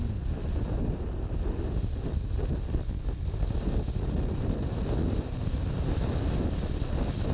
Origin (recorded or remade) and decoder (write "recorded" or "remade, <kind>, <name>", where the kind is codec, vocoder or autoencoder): recorded